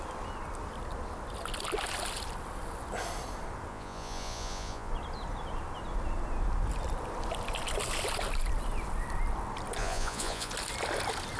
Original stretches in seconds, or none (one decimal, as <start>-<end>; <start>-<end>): 0.0-3.7; 4.9-9.8; 10.5-11.4